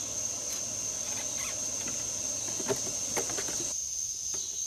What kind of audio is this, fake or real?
real